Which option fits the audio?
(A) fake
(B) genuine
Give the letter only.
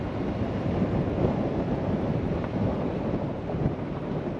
A